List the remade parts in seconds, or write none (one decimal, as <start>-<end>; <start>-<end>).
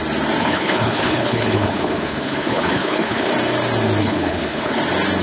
0.4-3.3; 4.0-4.8